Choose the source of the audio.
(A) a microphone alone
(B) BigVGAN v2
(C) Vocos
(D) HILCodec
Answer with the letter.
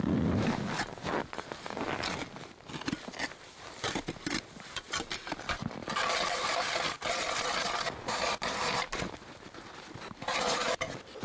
A